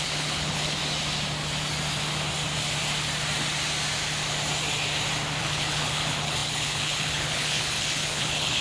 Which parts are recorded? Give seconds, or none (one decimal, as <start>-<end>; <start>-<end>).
0.8-5.4